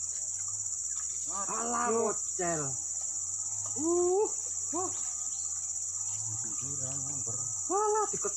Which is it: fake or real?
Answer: real